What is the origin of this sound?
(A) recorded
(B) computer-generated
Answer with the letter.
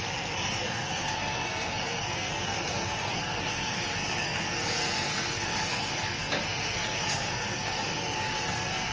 B